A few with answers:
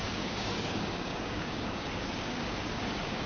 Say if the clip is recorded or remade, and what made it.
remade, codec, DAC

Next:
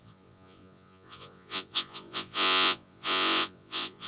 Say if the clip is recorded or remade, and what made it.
remade, vocoder, Vocos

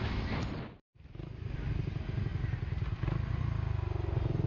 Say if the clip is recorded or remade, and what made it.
recorded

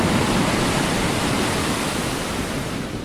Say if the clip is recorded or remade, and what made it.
recorded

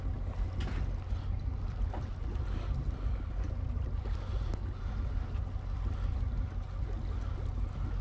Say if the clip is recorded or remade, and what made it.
recorded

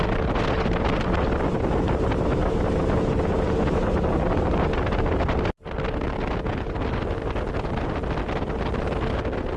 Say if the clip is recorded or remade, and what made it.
recorded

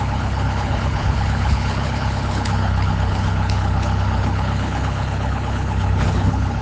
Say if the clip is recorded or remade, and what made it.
remade, codec, HILCodec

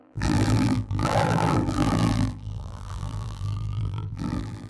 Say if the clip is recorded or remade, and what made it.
remade, vocoder, BigVGAN v2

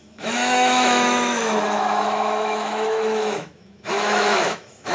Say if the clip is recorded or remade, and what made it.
remade, autoencoder, DAC-VAE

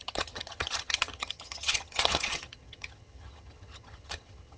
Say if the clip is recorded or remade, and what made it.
remade, vocoder, HiFi-GAN